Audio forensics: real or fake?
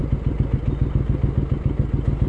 real